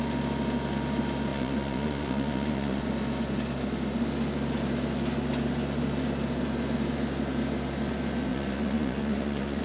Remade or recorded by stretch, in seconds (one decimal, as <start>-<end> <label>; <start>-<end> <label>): 0.0-1.3 recorded; 1.3-2.8 remade; 2.8-8.3 recorded; 8.3-9.6 remade